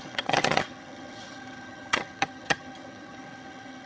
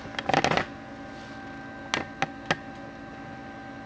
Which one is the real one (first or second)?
second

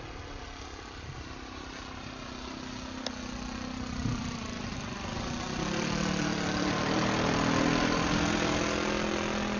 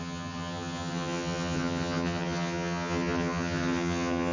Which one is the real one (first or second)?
first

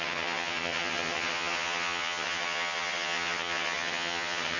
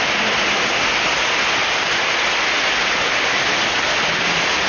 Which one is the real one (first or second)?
second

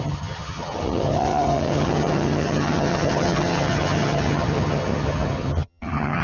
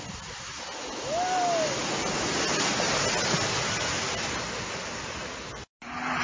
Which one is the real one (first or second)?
second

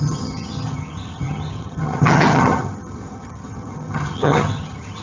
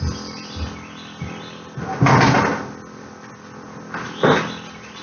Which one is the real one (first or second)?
second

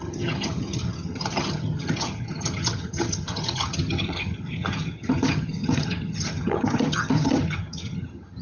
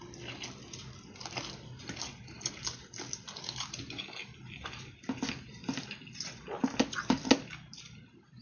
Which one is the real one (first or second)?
second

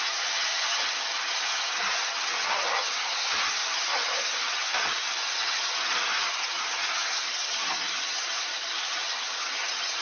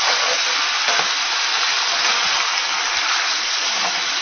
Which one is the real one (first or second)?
second